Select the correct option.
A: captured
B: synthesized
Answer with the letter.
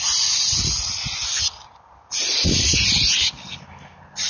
A